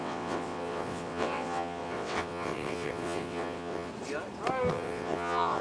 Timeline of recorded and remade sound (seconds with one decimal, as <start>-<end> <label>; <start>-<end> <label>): 0.0-3.9 remade; 3.9-4.7 recorded; 4.7-5.6 remade